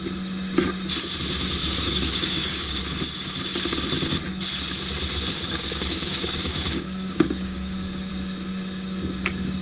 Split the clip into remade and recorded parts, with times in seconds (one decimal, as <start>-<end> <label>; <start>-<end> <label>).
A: 0.0-1.6 recorded; 1.6-2.8 remade; 2.8-5.3 recorded; 5.3-8.1 remade; 8.1-9.6 recorded

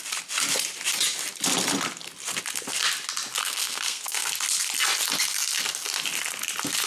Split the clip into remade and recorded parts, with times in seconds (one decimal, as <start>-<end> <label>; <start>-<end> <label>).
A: 0.0-3.4 recorded; 3.4-4.3 remade; 4.3-6.9 recorded

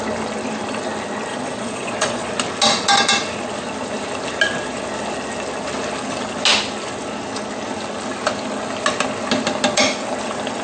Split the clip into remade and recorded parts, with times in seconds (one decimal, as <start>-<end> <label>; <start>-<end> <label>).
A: 0.0-1.3 recorded; 1.3-2.3 remade; 2.3-10.6 recorded

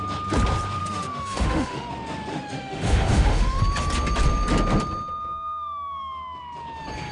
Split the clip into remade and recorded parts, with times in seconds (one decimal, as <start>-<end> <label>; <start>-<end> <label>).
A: 0.0-0.8 recorded; 0.8-1.9 remade; 1.9-2.3 recorded; 2.3-3.6 remade; 3.6-7.1 recorded

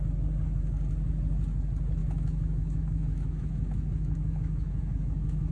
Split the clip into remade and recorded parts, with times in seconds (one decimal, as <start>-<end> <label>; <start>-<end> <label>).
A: 0.0-2.0 recorded; 2.0-5.5 remade